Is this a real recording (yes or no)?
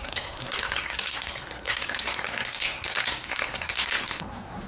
no